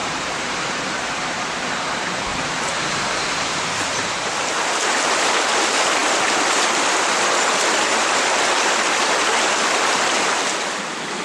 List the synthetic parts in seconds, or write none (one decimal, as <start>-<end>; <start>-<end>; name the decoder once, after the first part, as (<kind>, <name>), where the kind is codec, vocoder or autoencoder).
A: 0.0-1.4 (vocoder, BigVGAN v2); 2.3-5.3